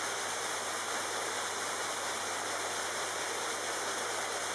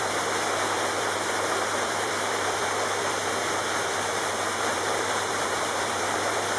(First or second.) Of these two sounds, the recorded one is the first